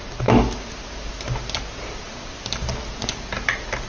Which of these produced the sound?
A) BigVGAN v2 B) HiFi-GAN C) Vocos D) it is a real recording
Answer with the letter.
D